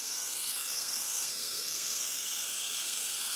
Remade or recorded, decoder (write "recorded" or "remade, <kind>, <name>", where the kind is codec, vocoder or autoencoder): remade, codec, SNAC